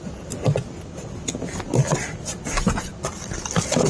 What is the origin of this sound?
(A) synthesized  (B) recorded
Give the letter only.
B